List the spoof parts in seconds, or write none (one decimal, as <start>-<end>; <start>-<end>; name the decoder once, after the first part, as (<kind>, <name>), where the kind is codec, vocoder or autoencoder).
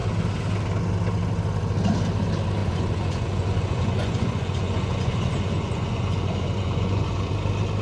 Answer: 2.6-7.3 (vocoder, Vocos)